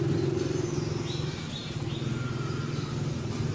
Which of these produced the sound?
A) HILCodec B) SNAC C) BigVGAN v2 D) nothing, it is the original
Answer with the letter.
D